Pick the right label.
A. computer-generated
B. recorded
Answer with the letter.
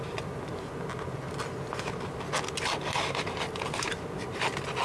B